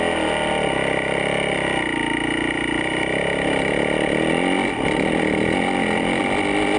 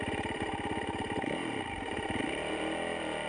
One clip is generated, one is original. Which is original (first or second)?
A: first